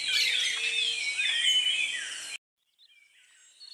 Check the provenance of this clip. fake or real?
real